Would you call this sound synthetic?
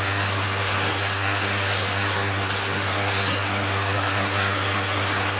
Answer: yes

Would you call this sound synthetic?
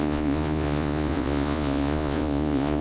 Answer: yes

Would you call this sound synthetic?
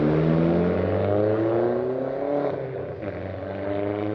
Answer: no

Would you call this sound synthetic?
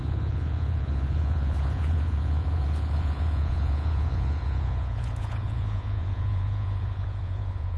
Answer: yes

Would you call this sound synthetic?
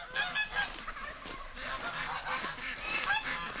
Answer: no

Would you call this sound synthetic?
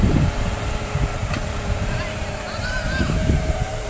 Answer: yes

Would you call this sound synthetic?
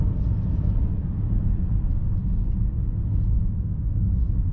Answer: no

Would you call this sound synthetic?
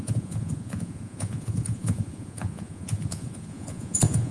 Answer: yes